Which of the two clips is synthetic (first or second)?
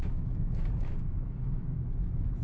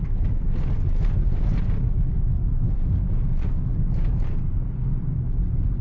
first